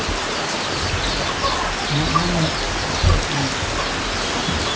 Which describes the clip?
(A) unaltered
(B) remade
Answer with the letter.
A